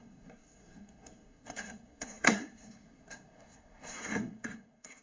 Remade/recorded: remade